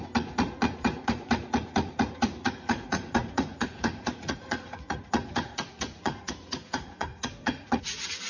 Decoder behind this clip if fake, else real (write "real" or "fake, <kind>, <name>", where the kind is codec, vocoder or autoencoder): fake, vocoder, Vocos